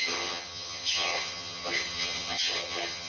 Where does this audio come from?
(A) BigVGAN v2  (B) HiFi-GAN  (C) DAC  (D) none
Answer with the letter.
B